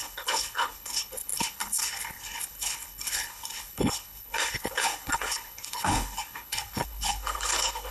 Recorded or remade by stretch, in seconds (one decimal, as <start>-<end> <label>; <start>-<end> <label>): 0.0-7.9 remade